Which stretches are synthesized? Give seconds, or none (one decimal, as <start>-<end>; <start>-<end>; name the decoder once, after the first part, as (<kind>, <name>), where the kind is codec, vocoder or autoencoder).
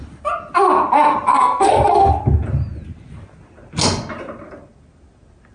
1.3-2.1 (codec, SNAC)